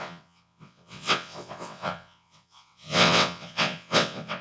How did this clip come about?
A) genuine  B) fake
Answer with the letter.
B